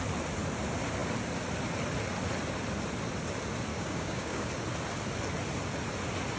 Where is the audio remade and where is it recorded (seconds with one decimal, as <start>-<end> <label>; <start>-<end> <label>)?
0.0-3.7 recorded; 3.7-4.5 remade; 4.5-6.4 recorded